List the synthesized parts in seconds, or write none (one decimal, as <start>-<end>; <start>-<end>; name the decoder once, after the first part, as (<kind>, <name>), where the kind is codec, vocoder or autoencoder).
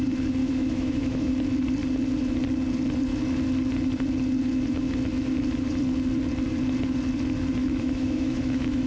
0.4-1.3 (autoencoder, DAC-VAE); 7.6-8.9